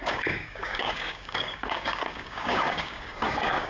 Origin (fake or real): fake